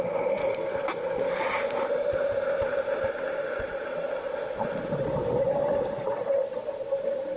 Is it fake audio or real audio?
real